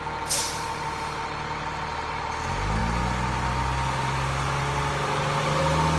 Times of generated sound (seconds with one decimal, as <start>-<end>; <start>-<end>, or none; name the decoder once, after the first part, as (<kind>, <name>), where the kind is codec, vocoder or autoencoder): none